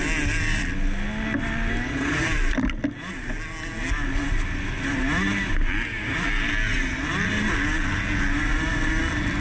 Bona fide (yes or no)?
yes